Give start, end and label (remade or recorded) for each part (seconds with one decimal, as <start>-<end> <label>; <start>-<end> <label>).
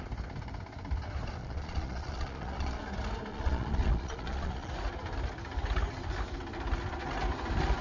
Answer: 0.0-1.4 recorded; 1.4-2.8 remade; 2.8-3.3 recorded; 3.3-4.7 remade; 4.7-7.8 recorded